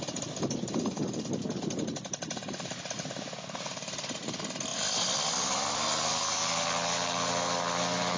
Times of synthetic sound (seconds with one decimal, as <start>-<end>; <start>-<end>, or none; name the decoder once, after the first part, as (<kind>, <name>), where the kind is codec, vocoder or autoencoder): none